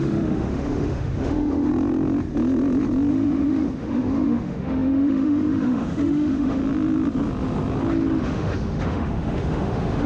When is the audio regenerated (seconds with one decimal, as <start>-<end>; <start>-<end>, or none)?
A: 0.0-1.7; 3.1-6.6; 8.2-10.1

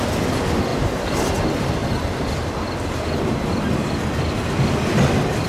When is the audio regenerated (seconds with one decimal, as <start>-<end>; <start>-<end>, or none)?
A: 0.7-1.4

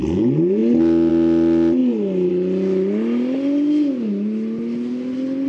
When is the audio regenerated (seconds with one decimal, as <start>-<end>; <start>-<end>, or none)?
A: none

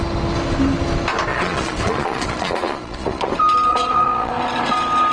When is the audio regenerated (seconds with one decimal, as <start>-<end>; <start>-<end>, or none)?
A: 1.3-3.3; 3.7-4.3

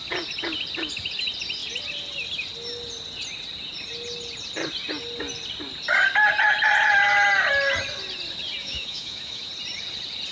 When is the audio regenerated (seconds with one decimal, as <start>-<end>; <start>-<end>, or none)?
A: 8.6-9.5

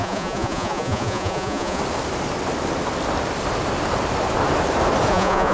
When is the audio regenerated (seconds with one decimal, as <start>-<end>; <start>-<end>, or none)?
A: 0.0-1.8; 5.1-5.5

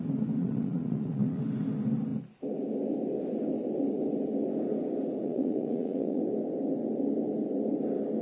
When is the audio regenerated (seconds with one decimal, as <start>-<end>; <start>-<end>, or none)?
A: 0.4-1.4; 5.2-6.2

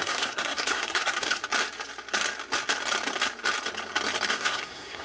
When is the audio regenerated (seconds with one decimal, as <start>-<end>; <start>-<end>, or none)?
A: 0.0-1.4; 4.3-5.0